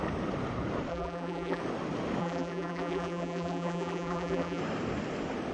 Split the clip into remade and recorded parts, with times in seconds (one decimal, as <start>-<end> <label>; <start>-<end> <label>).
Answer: 0.0-0.9 recorded; 0.9-1.6 remade; 1.6-2.2 recorded; 2.2-4.6 remade; 4.6-5.5 recorded